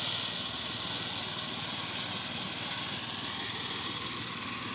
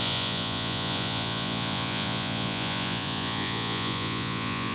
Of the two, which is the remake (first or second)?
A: second